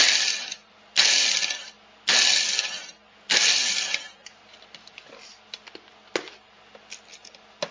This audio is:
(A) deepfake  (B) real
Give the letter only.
B